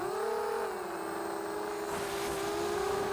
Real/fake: real